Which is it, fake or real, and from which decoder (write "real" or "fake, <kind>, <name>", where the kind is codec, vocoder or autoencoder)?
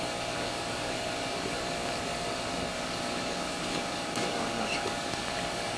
fake, codec, DAC